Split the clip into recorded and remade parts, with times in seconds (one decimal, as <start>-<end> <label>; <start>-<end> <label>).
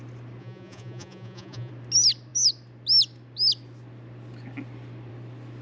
0.0-0.4 recorded; 0.4-1.7 remade; 1.7-5.6 recorded